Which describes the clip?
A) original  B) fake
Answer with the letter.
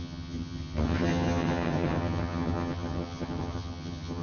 B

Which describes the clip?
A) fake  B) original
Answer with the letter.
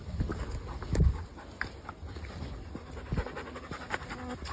B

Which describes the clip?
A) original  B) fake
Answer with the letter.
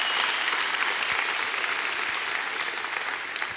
A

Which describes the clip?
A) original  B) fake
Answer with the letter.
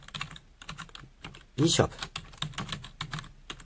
A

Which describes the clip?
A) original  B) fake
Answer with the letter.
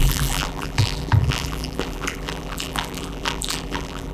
B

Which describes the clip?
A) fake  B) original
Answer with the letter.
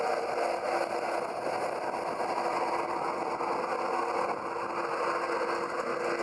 B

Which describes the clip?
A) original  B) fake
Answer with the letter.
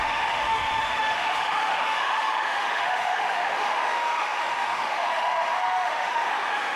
B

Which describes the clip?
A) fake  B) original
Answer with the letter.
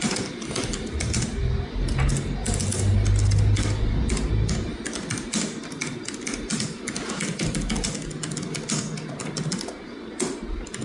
B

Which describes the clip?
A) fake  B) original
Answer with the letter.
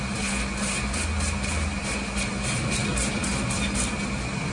B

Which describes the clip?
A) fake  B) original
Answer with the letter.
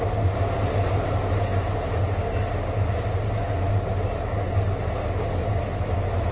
B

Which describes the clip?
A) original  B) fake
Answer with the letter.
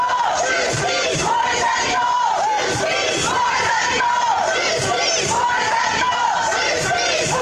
B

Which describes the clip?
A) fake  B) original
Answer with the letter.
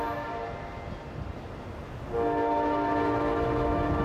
B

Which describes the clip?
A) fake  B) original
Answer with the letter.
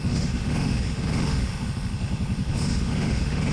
A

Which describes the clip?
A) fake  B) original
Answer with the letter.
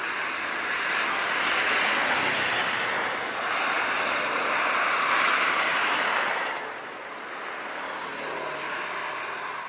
B